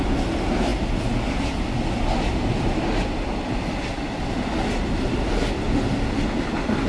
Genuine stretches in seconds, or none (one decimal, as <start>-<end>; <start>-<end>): 0.0-6.9